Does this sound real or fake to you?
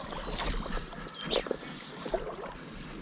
real